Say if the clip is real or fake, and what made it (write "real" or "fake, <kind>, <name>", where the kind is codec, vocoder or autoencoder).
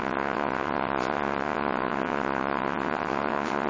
fake, vocoder, WaveNeXt